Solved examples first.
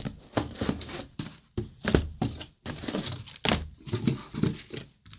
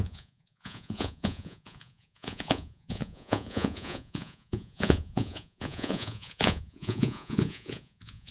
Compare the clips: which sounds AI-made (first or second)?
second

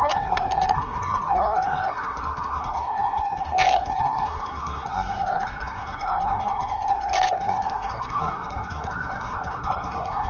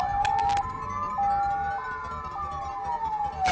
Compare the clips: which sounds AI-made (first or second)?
first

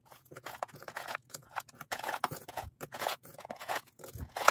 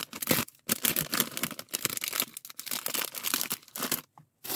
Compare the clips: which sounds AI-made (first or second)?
first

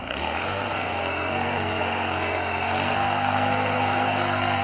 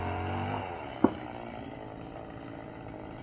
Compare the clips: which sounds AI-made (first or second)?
first